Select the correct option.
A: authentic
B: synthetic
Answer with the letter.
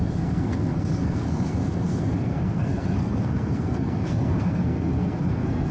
B